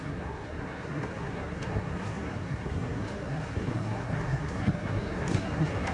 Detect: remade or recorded remade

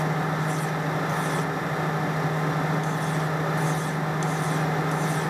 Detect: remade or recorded recorded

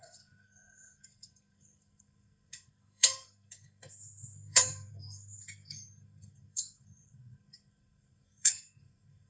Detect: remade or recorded remade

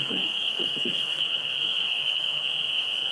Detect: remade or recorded remade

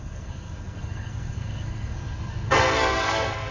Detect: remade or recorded remade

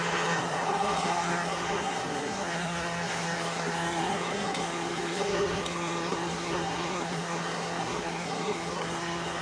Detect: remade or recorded remade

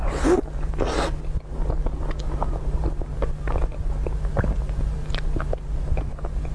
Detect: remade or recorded recorded